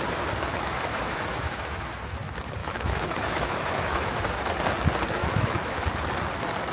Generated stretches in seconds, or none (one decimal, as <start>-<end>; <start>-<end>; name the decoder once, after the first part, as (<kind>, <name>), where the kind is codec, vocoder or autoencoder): 0.5-2.0 (autoencoder, DAC-VAE); 2.6-4.2; 5.2-5.8